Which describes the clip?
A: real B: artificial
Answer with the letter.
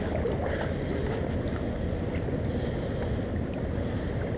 A